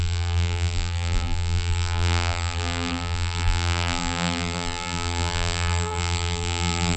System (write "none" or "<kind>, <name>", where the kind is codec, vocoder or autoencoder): vocoder, BigVGAN v2